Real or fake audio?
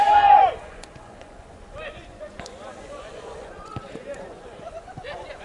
fake